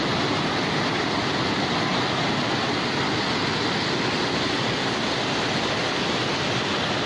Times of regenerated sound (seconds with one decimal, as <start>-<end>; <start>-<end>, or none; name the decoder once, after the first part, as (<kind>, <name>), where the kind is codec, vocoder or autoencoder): none